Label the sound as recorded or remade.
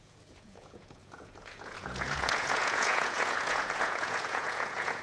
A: remade